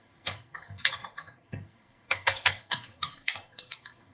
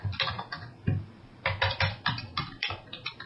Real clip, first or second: second